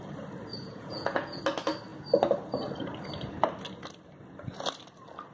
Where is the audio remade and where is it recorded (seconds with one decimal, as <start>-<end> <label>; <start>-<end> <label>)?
0.0-0.5 recorded; 0.5-1.4 remade; 1.4-5.3 recorded